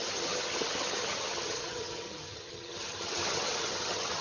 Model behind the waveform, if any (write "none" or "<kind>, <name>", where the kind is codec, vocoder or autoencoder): vocoder, HiFi-GAN